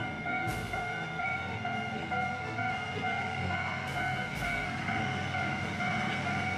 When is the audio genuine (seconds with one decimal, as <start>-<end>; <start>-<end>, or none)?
none

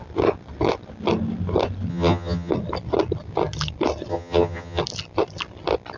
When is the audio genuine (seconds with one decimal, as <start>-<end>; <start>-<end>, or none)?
0.0-1.9; 2.5-4.1; 4.8-6.0

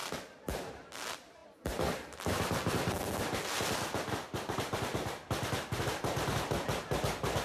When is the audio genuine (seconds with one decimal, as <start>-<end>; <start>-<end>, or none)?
0.7-7.4

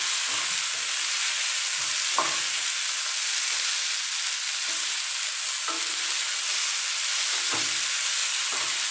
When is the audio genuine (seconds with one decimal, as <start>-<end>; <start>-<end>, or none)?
0.0-8.9

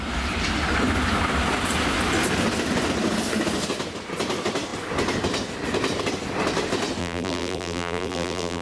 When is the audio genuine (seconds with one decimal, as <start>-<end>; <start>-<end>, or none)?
0.0-7.0

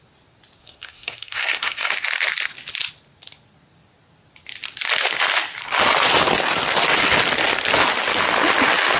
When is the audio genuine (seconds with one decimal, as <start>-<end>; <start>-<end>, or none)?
0.0-0.6; 1.9-9.0